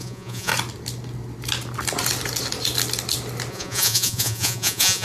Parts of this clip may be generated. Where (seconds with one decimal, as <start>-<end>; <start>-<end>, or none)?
0.0-0.5; 3.5-5.0